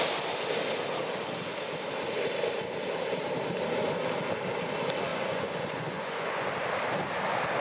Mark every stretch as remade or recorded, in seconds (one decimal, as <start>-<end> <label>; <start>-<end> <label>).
0.0-5.1 recorded; 5.1-6.5 remade; 6.5-7.6 recorded